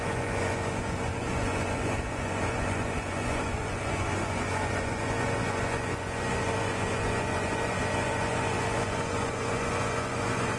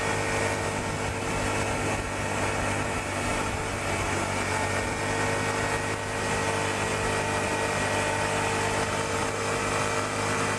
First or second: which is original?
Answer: second